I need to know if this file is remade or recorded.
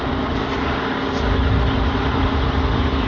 recorded